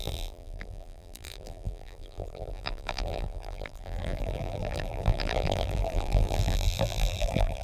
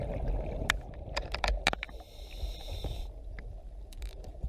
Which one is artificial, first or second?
first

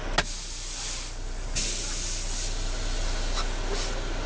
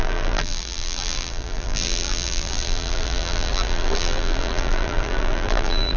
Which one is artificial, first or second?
second